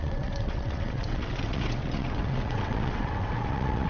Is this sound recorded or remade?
remade